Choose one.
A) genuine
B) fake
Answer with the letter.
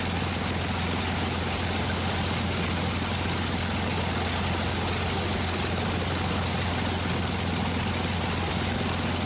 A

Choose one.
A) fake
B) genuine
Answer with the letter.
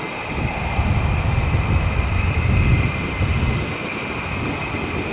B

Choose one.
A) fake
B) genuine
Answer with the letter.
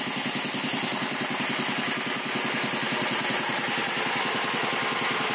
B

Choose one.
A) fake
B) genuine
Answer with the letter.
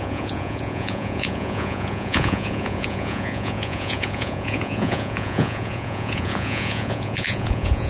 A